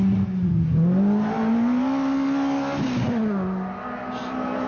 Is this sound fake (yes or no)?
no